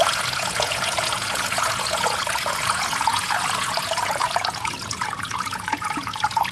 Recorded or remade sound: remade